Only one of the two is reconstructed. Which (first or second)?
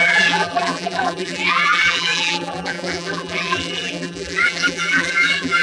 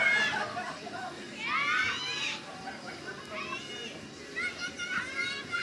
first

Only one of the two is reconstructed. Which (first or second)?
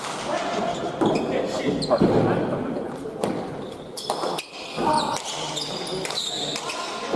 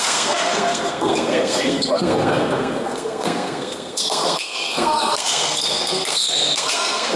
second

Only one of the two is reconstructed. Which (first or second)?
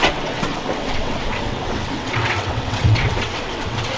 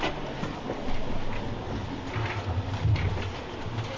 first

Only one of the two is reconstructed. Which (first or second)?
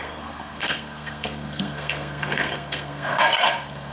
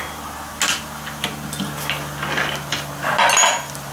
first